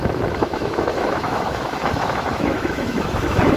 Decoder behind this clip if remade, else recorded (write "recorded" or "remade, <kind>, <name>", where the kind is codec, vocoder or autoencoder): remade, autoencoder, DAC-VAE